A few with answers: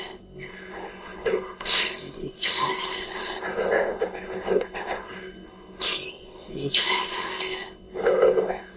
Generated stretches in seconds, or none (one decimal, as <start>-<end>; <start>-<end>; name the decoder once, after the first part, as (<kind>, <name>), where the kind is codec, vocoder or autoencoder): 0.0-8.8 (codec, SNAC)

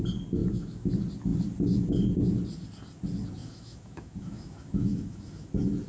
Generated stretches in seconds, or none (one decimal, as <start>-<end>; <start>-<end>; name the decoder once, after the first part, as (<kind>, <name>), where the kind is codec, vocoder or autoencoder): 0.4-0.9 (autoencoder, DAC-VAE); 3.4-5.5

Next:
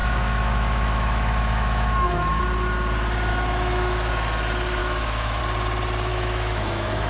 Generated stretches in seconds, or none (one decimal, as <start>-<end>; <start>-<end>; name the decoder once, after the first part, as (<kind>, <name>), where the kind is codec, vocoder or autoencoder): 0.0-2.4 (autoencoder, DAC-VAE); 3.3-4.1; 4.8-5.4; 6.1-7.1

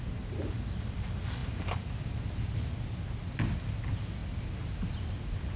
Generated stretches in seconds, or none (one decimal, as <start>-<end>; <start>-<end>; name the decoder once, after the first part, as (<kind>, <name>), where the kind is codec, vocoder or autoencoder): none

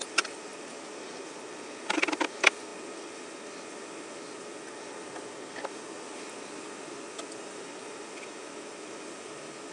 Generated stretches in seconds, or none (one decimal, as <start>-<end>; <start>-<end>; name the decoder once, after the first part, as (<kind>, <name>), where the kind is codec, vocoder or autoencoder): none

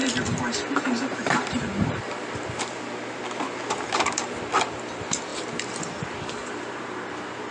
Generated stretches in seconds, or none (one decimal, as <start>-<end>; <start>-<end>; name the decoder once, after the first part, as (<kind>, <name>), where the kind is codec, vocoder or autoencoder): 0.0-2.0 (vocoder, BigVGAN v2); 6.4-7.1

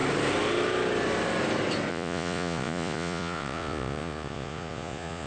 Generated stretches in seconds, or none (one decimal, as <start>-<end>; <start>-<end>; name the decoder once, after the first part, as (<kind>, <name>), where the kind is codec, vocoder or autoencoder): 1.9-5.3 (vocoder, Vocos)